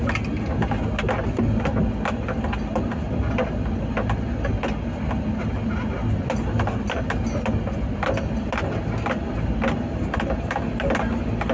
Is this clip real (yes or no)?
yes